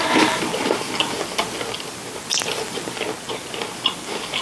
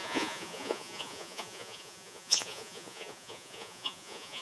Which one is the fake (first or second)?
second